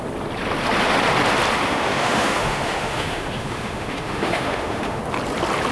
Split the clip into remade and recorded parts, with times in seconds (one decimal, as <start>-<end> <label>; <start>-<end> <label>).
0.0-1.6 recorded; 1.6-5.0 remade; 5.0-5.7 recorded